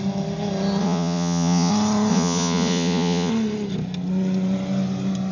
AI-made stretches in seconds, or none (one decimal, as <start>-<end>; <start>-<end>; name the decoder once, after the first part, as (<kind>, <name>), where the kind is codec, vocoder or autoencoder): 0.8-1.7 (vocoder, Vocos); 2.1-3.3